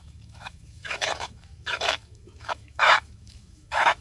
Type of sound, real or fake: fake